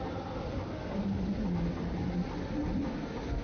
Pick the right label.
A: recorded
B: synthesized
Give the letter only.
A